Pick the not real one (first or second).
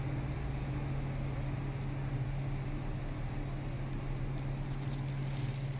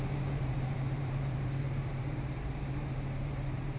second